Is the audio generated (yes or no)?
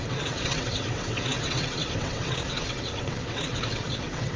yes